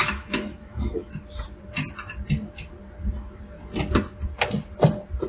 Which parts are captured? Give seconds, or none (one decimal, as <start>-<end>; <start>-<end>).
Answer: 1.1-5.3